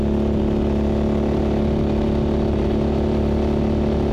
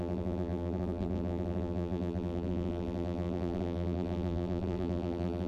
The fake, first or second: second